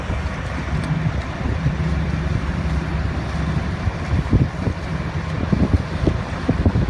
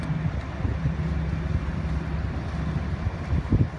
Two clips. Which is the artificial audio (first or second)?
first